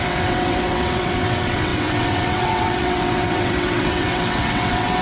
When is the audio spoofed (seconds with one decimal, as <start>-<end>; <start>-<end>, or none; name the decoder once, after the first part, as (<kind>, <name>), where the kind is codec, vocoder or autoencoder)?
0.0-5.0 (vocoder, WaveNeXt)